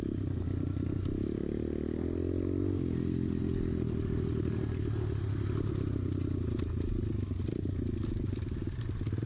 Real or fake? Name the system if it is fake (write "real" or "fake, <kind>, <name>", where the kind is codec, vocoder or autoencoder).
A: real